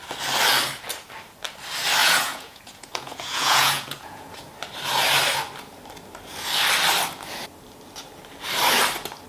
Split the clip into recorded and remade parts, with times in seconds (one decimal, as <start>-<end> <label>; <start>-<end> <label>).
0.0-2.0 recorded; 2.0-4.5 remade; 4.5-9.3 recorded